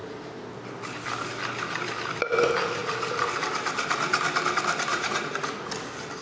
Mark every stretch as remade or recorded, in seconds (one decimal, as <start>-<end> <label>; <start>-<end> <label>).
0.0-4.9 recorded; 4.9-5.7 remade; 5.7-6.2 recorded